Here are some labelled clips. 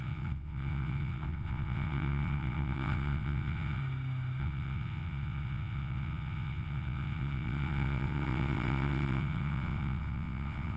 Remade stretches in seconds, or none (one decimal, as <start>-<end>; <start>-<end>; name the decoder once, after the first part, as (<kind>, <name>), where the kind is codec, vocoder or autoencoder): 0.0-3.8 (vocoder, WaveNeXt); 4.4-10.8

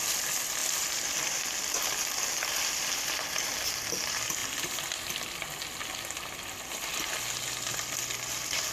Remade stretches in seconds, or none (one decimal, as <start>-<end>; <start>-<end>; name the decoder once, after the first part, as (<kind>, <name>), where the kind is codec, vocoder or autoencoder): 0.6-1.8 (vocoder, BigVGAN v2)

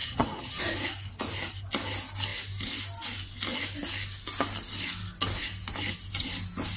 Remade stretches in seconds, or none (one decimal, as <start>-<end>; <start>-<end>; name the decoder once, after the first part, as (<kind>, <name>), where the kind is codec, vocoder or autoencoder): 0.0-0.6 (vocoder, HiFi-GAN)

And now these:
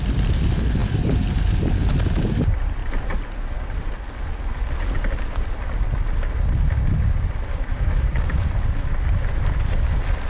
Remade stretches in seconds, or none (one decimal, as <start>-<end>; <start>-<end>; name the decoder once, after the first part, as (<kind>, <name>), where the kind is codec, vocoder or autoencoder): 7.7-8.5 (codec, DAC)